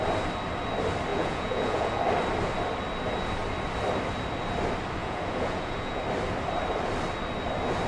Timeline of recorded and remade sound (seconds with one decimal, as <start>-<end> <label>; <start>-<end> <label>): 0.0-1.1 recorded; 1.1-2.0 remade; 2.0-5.0 recorded; 5.0-6.0 remade; 6.0-7.9 recorded